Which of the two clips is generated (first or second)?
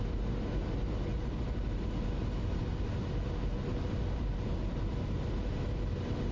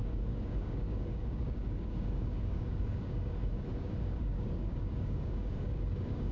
second